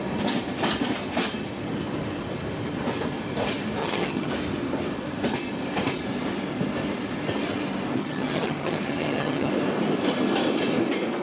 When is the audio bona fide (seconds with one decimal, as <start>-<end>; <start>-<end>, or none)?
0.0-3.8; 4.3-8.0; 9.5-11.2